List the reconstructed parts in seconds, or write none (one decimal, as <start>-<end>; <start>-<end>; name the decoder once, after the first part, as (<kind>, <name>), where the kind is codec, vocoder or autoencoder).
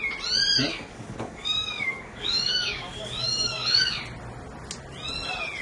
0.7-4.0 (codec, DAC)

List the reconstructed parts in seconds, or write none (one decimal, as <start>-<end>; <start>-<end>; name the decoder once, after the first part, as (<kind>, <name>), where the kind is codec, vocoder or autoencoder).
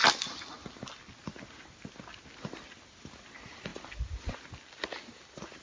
none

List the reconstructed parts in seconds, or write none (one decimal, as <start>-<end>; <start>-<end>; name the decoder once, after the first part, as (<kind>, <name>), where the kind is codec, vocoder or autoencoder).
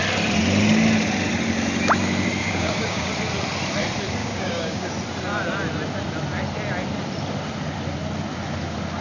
2.4-3.1 (codec, DAC); 4.2-4.9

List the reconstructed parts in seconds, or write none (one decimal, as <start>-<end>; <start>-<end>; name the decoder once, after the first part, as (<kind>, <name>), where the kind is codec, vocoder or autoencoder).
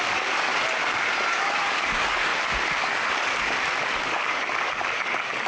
0.0-0.5 (codec, DAC); 1.3-2.3; 2.8-5.5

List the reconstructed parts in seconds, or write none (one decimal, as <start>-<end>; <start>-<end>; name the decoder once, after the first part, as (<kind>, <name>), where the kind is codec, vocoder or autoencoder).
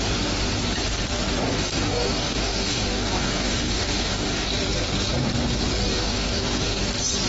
1.5-4.5 (codec, DAC); 5.8-6.8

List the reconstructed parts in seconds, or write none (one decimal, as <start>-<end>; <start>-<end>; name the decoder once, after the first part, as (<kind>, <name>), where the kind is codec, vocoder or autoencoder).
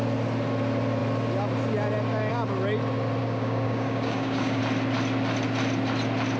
3.2-4.6 (codec, DAC)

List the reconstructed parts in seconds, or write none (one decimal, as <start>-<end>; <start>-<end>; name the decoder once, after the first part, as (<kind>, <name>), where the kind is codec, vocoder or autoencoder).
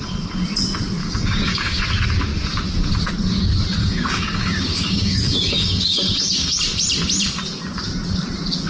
1.0-1.8 (codec, DAC); 3.8-6.6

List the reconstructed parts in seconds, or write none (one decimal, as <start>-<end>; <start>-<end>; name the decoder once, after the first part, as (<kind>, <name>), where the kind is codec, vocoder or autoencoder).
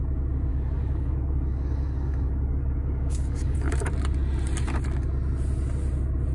0.5-3.9 (codec, DAC)